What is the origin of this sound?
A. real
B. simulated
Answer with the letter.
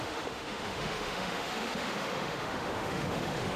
B